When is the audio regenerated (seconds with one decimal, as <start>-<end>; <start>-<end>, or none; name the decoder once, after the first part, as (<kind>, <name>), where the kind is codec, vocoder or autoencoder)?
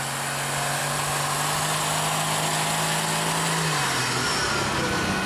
none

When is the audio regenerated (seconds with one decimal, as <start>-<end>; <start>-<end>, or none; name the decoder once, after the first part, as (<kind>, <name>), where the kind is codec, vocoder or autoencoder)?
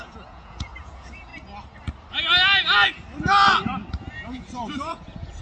0.0-1.3 (vocoder, Vocos); 4.1-5.4